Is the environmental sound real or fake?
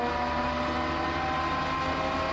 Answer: real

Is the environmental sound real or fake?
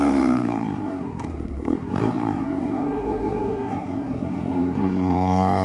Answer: fake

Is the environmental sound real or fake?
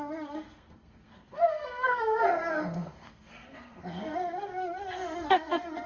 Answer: fake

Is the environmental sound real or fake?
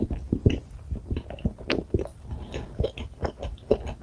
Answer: real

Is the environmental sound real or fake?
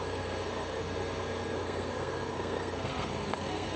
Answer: fake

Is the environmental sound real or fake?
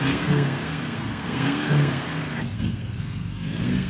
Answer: fake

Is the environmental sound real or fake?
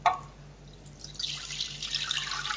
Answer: real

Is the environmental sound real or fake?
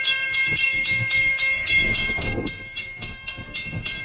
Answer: fake